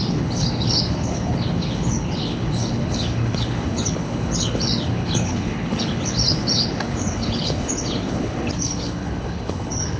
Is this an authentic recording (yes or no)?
no